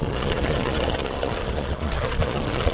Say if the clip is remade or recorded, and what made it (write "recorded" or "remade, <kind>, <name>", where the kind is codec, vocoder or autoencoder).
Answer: remade, vocoder, Vocos